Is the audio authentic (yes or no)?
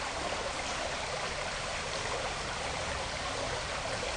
yes